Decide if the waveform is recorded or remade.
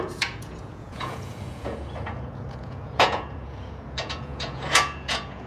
remade